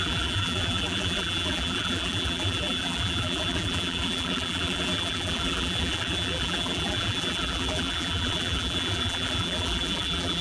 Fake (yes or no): yes